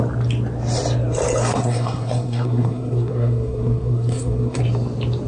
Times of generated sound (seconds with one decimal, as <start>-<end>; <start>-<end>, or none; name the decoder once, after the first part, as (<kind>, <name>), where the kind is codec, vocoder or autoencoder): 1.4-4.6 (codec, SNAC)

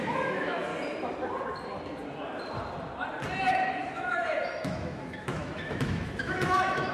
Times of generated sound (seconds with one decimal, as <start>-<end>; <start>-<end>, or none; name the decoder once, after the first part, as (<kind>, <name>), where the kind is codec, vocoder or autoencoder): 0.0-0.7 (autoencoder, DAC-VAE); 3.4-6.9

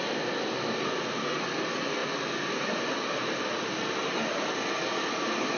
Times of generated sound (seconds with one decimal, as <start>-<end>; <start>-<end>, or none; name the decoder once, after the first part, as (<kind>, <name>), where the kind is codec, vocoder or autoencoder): none

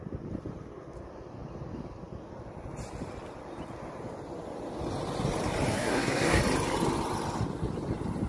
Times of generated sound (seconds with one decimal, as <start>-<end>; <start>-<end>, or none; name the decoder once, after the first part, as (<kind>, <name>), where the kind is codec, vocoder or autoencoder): 5.7-6.4 (codec, SNAC)